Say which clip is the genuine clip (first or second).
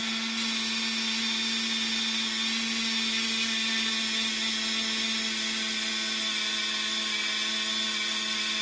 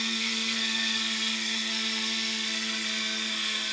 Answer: first